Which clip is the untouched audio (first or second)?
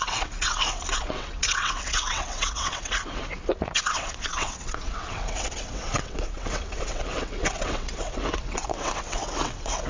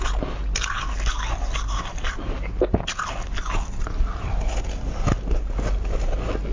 second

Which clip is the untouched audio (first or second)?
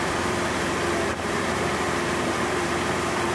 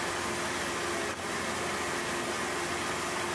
second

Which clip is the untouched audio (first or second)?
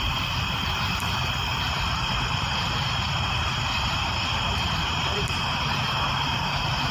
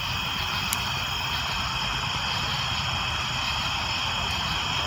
second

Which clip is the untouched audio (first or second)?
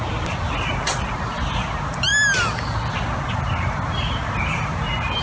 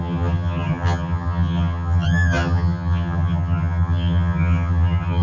first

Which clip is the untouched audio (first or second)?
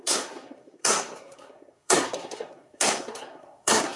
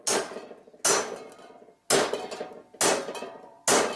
second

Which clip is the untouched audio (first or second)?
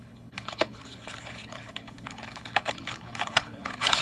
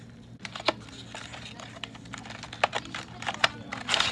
second